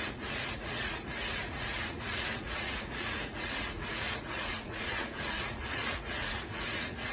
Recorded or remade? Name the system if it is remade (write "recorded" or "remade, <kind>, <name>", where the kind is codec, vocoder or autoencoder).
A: remade, vocoder, Vocos